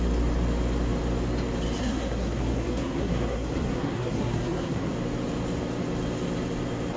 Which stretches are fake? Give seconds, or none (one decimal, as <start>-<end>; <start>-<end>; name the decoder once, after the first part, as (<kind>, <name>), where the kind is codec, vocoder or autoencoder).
1.8-4.9 (codec, SNAC)